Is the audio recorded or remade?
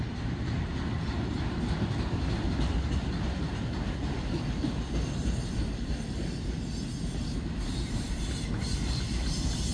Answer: remade